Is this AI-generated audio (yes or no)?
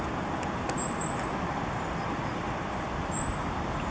no